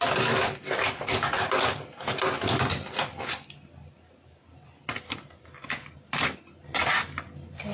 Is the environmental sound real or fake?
real